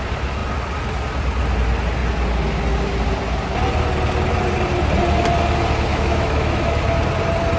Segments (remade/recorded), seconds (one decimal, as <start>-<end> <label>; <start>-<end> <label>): 0.0-5.9 recorded; 5.9-6.8 remade; 6.8-7.6 recorded